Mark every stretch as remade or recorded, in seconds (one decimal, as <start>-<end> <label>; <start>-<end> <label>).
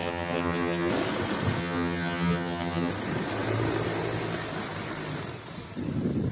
0.0-0.9 remade; 0.9-1.6 recorded; 1.6-2.9 remade; 2.9-6.3 recorded